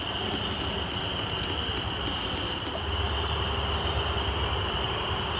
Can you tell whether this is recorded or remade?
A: recorded